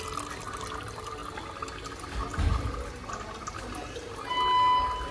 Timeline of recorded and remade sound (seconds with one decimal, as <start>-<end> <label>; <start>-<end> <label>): 0.0-5.1 recorded